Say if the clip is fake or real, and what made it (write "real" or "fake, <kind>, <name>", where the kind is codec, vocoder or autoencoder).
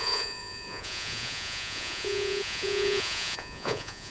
fake, vocoder, Vocos